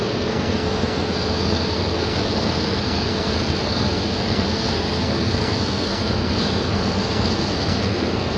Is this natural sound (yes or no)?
no